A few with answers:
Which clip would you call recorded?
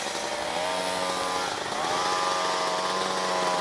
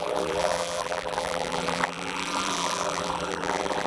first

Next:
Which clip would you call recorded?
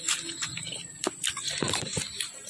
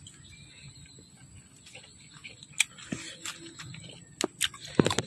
second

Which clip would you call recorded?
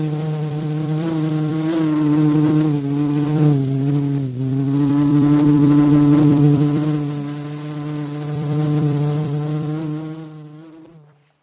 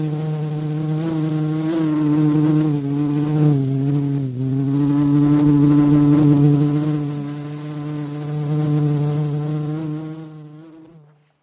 second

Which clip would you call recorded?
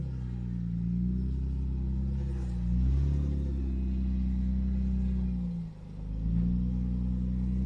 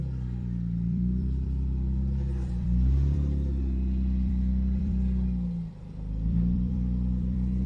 first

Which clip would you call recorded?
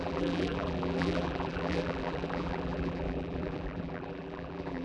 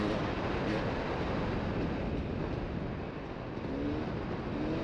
second